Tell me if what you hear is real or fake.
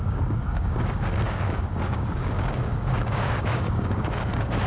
fake